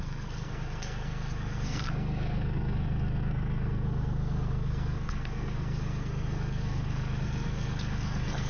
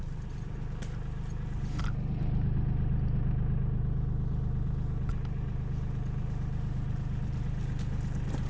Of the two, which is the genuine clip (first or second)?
second